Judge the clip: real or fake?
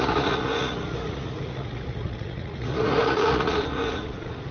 fake